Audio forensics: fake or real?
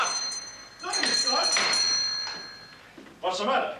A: fake